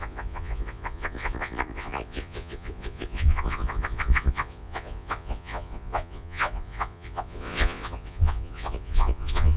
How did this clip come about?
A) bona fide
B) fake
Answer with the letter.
B